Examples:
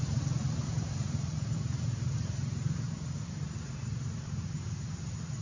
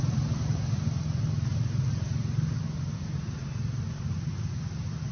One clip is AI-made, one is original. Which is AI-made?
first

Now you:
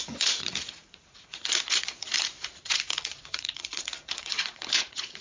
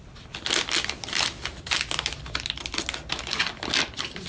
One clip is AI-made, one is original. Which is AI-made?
first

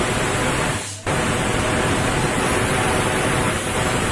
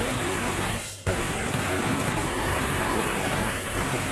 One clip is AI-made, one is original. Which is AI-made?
second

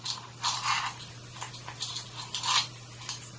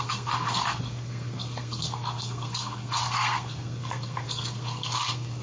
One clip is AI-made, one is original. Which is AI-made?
second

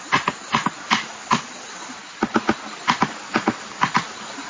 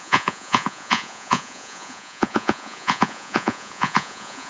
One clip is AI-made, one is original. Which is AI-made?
second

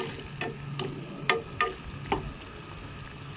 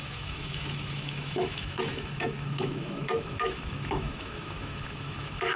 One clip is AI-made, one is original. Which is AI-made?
second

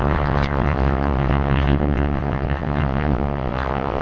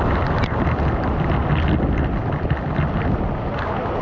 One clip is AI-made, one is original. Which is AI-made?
first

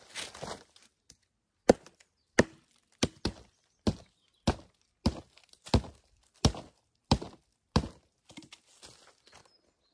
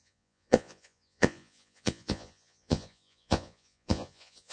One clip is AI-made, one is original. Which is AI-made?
second